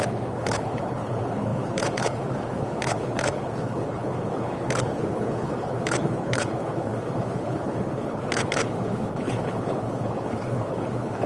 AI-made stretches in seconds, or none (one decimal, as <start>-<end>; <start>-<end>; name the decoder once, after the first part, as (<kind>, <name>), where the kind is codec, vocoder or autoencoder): 0.0-11.3 (codec, HILCodec)